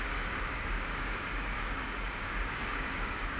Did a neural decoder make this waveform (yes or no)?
yes